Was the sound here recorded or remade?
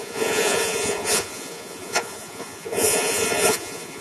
remade